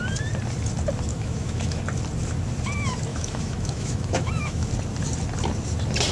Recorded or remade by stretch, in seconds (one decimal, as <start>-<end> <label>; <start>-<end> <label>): 0.0-1.1 recorded; 1.1-1.8 remade; 1.8-3.1 recorded; 3.1-4.7 remade; 4.7-6.1 recorded